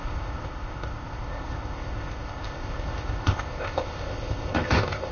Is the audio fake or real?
fake